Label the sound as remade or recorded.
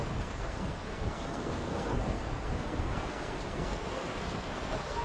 remade